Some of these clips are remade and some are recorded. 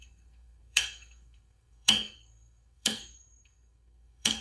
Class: remade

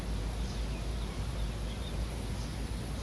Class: recorded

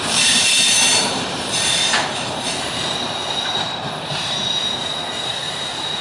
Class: remade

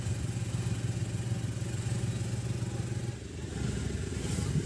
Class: recorded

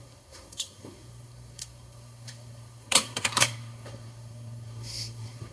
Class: remade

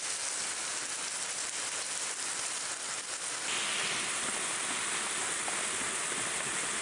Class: recorded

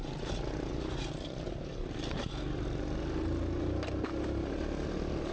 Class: recorded